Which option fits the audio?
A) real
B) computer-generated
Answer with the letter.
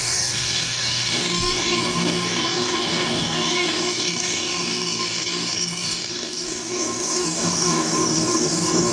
B